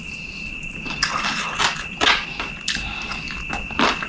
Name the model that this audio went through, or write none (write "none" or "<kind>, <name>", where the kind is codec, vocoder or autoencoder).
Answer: none